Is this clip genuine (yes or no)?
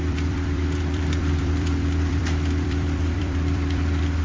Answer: no